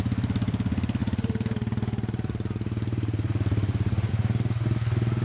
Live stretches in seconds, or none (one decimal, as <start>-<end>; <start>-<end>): 0.0-1.0; 4.1-5.2